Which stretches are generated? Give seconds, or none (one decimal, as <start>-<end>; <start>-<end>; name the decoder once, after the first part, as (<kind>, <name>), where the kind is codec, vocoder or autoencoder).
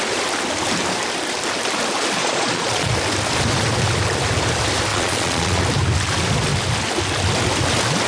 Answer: 2.2-2.9 (vocoder, Vocos); 4.9-5.6